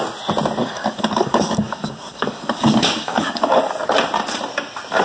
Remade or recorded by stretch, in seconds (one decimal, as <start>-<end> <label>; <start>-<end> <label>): 0.0-0.6 recorded; 0.6-3.6 remade; 3.6-5.0 recorded